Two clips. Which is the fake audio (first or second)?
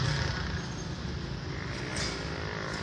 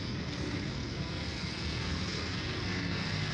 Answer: second